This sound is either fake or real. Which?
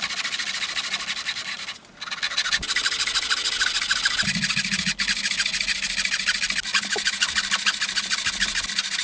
real